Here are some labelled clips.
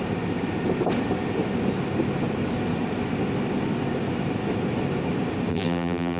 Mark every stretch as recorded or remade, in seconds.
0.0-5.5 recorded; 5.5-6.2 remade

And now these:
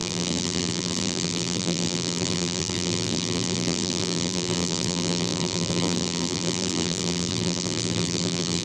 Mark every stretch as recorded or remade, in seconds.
0.0-8.6 remade

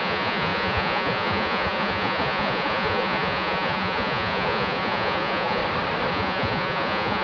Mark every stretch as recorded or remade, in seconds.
0.0-5.6 remade; 5.6-6.1 recorded; 6.1-7.2 remade

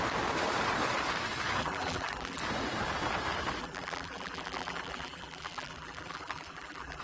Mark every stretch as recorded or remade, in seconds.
0.0-1.6 recorded; 1.6-2.4 remade; 2.4-3.6 recorded; 3.6-7.0 remade

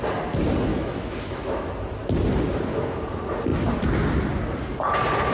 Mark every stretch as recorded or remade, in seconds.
0.0-0.7 recorded; 0.7-1.7 remade; 1.7-5.3 recorded

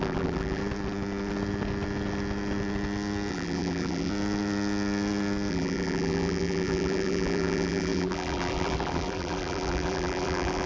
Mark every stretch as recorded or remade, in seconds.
0.0-0.6 remade; 0.6-3.3 recorded; 3.3-4.1 remade; 4.1-5.5 recorded; 5.5-10.7 remade

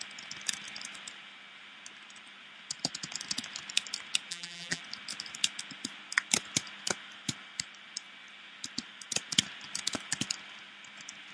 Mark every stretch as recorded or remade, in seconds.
0.0-4.3 recorded; 4.3-4.8 remade; 4.8-11.3 recorded

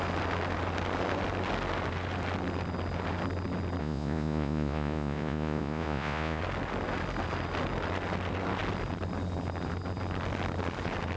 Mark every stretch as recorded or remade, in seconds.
0.0-3.8 recorded; 3.8-6.4 remade; 6.4-11.2 recorded